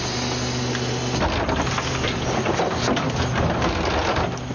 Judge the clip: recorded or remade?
recorded